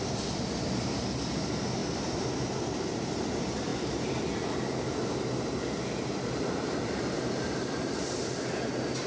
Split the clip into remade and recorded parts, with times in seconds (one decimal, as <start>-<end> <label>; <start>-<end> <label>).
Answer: 0.0-1.8 recorded; 1.8-2.4 remade; 2.4-3.7 recorded; 3.7-4.2 remade; 4.2-9.1 recorded